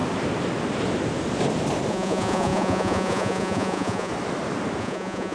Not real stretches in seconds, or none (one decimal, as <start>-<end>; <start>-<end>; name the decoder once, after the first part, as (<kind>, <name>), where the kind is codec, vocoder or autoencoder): 1.9-4.1 (vocoder, Vocos); 4.8-5.3